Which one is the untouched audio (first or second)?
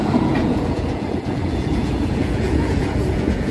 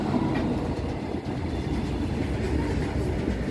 second